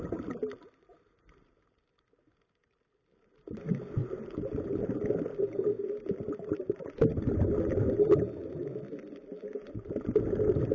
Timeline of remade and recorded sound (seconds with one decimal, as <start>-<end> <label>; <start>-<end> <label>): 0.0-10.7 recorded